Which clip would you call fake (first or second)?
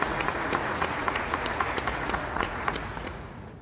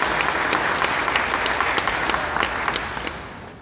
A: first